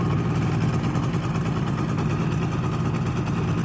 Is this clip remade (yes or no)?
no